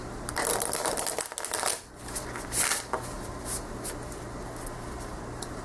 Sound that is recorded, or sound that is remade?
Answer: recorded